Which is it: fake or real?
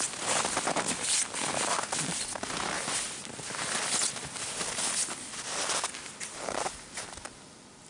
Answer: real